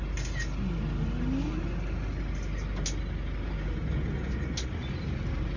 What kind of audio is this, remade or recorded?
recorded